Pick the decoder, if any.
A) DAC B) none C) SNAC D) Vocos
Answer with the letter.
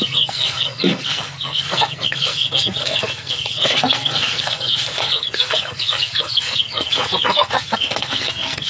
C